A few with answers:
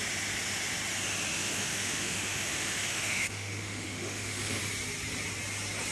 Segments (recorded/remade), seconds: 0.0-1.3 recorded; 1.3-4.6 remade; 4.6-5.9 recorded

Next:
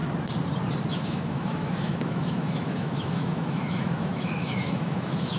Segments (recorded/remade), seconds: 0.0-0.9 recorded; 0.9-5.4 remade

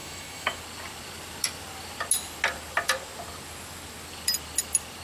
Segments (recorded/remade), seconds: 0.0-0.6 remade; 0.6-5.0 recorded

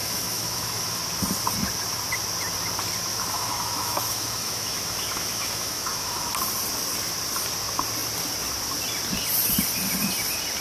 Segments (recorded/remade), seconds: 0.0-1.0 remade; 1.0-3.1 recorded; 3.1-6.3 remade; 6.3-10.6 recorded

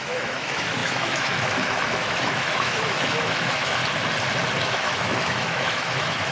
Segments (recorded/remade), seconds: 0.0-3.8 remade; 3.8-4.6 recorded; 4.6-6.3 remade

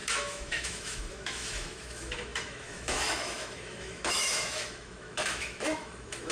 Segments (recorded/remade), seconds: 0.0-6.3 remade

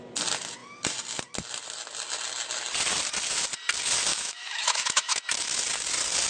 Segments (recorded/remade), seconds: 0.0-4.1 recorded; 4.1-5.2 remade; 5.2-6.3 recorded

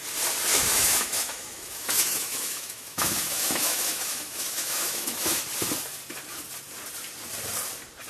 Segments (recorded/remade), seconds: 0.0-0.5 recorded; 0.5-5.4 remade; 5.4-8.1 recorded